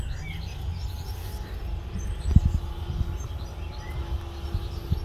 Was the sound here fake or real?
real